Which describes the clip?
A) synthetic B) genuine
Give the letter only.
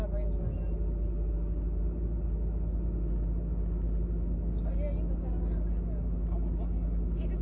B